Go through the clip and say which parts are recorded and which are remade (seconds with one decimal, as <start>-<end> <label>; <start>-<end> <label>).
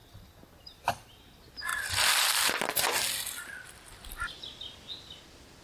0.0-1.7 recorded; 1.7-3.6 remade; 3.6-5.6 recorded